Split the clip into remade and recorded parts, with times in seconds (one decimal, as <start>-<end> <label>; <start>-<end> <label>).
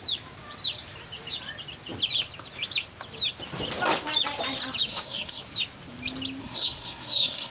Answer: 0.0-4.9 recorded; 4.9-5.4 remade; 5.4-6.4 recorded; 6.4-7.5 remade